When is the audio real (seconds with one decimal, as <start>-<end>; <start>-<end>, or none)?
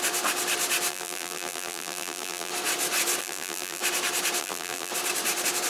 0.0-0.9; 2.5-3.2; 3.8-4.4; 4.9-5.7